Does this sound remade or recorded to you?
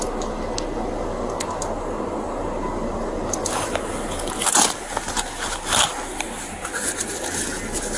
recorded